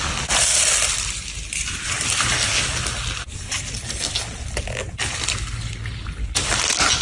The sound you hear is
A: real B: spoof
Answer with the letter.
A